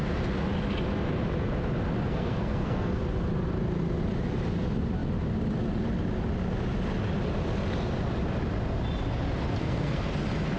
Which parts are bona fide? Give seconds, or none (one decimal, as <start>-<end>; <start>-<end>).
0.0-2.0; 3.0-9.6; 10.1-10.6

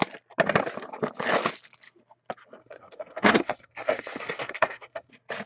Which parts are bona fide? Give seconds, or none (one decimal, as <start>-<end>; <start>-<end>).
0.0-2.6; 5.1-5.5